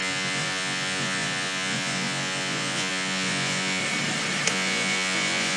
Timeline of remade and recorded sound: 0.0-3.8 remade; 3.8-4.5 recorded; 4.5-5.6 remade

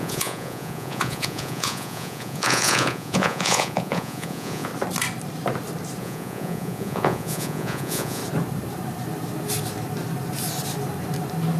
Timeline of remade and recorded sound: 0.0-4.7 remade; 4.7-6.0 recorded; 6.0-8.2 remade; 8.2-11.6 recorded

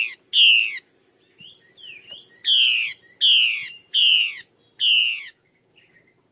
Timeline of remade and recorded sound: 0.0-3.6 recorded; 3.6-4.5 remade; 4.5-5.0 recorded; 5.0-5.7 remade; 5.7-6.3 recorded

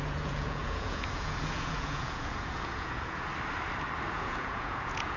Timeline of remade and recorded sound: 0.0-3.3 remade; 3.3-4.1 recorded; 4.1-5.2 remade

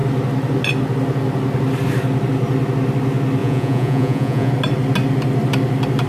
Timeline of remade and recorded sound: 0.0-3.4 recorded; 3.4-4.5 remade; 4.5-6.1 recorded

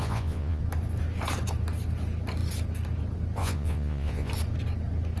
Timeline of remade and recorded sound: 0.0-0.6 remade; 0.6-3.4 recorded; 3.4-4.3 remade; 4.3-5.2 recorded

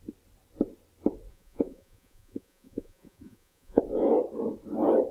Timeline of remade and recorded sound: 0.0-1.3 recorded; 1.3-3.8 remade; 3.8-5.1 recorded

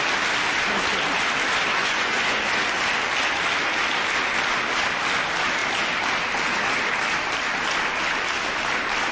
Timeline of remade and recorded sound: 0.0-1.8 recorded; 1.8-2.4 remade; 2.4-9.1 recorded